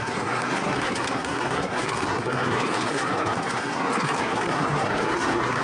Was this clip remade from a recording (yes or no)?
yes